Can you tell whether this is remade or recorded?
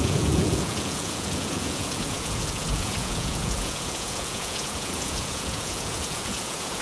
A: remade